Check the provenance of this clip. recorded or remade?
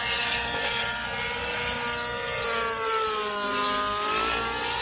recorded